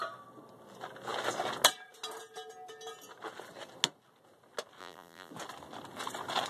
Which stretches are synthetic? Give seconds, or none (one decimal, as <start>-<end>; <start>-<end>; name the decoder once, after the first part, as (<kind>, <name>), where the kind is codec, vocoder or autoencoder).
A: 4.8-5.3 (vocoder, BigVGAN v2)